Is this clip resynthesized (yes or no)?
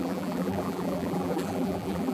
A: yes